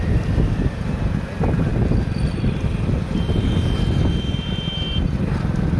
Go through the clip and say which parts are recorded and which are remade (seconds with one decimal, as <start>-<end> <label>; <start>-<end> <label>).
0.0-5.8 recorded